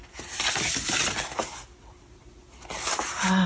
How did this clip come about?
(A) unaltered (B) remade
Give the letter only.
A